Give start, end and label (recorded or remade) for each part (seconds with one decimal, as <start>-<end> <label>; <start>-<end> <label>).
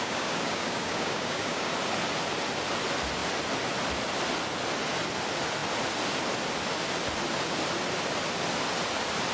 0.0-1.7 remade; 1.7-9.3 recorded